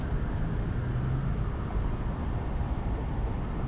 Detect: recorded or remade recorded